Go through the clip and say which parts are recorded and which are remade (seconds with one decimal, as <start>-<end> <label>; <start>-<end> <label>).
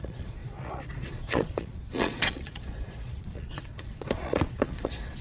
0.0-5.2 remade